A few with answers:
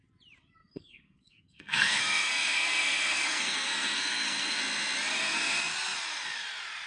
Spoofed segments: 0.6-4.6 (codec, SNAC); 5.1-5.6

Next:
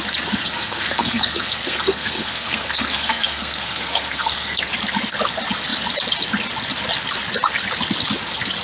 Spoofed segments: 0.4-4.7 (codec, SNAC)